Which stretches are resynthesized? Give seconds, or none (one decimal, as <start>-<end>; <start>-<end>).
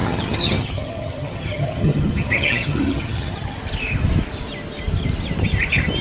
0.0-3.6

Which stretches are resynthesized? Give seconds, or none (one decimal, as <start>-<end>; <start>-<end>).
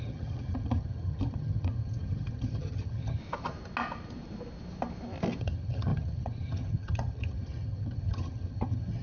0.0-3.2; 5.4-9.0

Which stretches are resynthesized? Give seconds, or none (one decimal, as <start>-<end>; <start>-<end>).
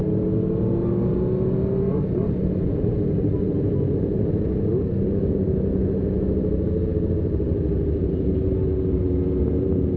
none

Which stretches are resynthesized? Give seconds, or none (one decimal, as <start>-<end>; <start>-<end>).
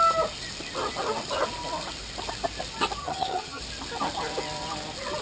3.0-3.6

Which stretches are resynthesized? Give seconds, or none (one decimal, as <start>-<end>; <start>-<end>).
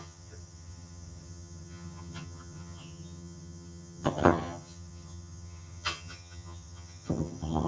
0.0-7.7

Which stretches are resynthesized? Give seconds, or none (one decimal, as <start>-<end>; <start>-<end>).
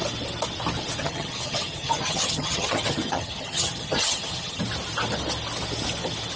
1.0-4.6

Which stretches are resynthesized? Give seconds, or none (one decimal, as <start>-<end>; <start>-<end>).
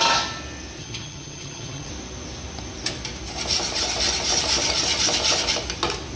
0.8-1.9